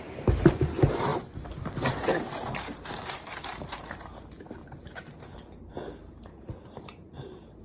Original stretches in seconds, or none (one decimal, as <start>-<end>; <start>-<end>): 1.1-1.9